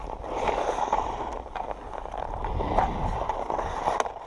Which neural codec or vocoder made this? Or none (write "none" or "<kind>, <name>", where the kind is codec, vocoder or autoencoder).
none